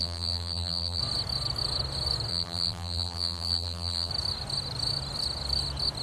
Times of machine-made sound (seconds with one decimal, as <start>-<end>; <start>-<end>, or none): 0.0-1.0; 2.3-4.1